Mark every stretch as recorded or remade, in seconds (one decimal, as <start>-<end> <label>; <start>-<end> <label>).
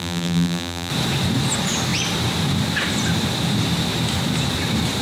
0.0-0.9 remade; 0.9-5.0 recorded